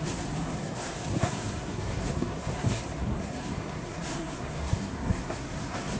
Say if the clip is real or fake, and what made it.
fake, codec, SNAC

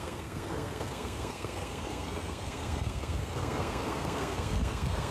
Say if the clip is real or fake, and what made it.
fake, codec, SNAC